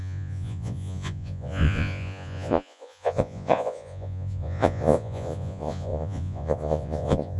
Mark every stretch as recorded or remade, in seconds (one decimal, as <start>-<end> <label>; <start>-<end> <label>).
0.0-7.4 remade